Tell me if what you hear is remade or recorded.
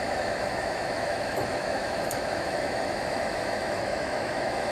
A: remade